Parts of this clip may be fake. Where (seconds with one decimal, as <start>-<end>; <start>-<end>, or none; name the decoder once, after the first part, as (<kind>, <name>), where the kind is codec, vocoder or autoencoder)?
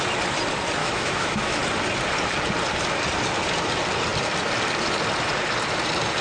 0.8-1.6 (autoencoder, DAC-VAE)